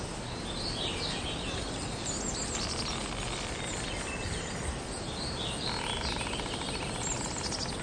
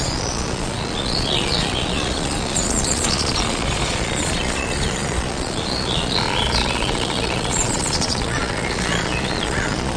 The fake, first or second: second